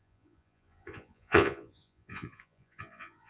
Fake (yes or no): yes